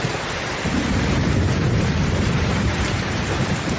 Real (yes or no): no